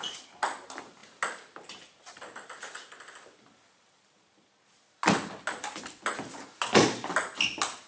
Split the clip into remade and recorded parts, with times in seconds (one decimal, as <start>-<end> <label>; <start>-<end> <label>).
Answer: 0.0-7.9 recorded